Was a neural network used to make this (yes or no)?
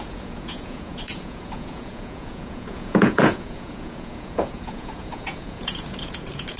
yes